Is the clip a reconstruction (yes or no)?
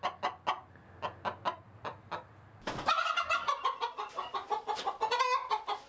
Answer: no